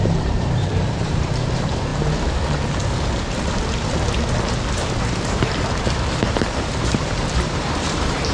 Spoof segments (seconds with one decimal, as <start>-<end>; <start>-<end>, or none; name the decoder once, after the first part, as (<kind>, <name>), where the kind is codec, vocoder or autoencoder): 0.0-1.9 (vocoder, BigVGAN v2); 5.0-8.3